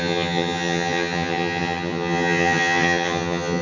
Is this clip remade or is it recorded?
remade